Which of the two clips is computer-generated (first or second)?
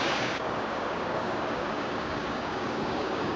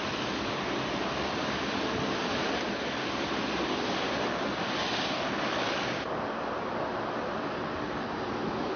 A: first